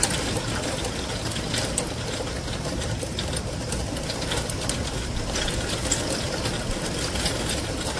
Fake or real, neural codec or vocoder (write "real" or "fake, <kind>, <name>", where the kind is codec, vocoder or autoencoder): real